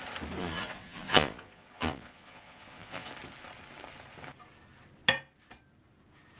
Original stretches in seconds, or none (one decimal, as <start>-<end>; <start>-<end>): 0.0-0.4; 3.1-6.4